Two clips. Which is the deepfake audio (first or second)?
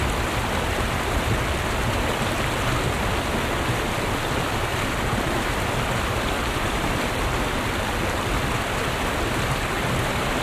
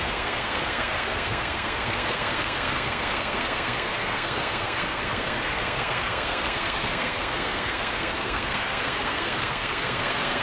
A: second